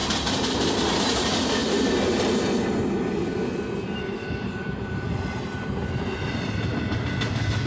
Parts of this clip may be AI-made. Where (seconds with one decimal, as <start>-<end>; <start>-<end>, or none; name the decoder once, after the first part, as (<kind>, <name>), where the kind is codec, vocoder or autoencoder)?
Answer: none